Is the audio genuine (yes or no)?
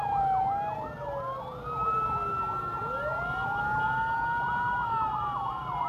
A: yes